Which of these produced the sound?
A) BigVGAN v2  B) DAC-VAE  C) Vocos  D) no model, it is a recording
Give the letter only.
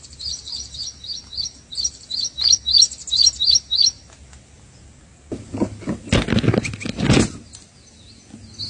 D